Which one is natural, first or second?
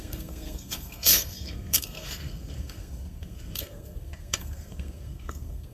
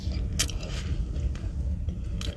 second